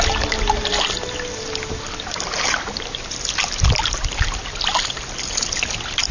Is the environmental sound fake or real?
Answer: real